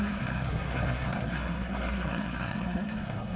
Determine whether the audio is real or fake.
fake